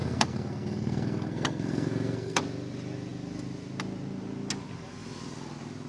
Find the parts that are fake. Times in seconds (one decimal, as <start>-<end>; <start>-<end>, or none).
0.0-2.4